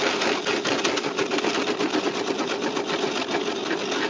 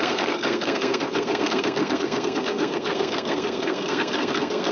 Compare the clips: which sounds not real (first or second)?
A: second